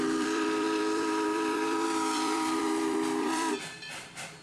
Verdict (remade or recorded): remade